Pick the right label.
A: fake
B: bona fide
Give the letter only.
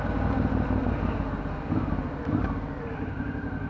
B